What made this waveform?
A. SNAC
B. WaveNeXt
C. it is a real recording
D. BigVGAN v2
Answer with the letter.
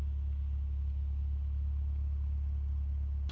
C